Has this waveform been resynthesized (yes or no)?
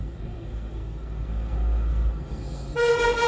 yes